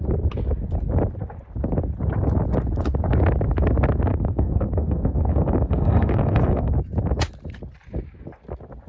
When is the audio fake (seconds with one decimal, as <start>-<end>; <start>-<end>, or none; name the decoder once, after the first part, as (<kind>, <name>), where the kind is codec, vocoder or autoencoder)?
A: 4.1-6.7 (codec, SNAC)